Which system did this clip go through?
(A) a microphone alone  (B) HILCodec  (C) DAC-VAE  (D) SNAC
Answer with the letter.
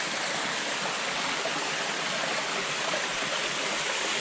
A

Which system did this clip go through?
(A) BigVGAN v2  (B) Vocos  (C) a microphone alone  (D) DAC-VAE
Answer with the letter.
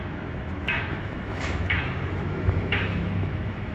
D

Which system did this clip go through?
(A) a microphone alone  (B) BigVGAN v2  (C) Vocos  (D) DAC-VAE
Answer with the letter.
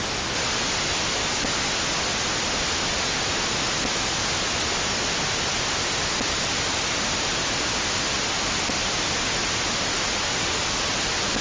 A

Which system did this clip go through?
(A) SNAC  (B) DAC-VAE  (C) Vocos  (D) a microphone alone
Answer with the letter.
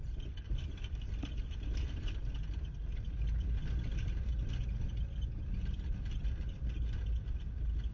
D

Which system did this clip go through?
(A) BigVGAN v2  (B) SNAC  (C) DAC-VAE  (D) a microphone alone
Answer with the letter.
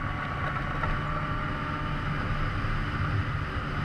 D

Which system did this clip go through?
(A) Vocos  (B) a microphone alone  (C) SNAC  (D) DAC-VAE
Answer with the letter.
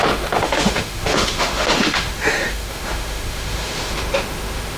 D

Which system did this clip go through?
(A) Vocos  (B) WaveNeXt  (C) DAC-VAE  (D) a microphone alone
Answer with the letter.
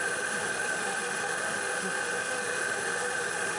C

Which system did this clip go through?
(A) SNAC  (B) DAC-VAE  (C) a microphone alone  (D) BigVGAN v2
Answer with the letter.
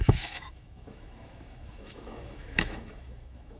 B